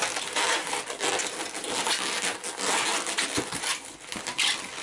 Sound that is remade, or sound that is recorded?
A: recorded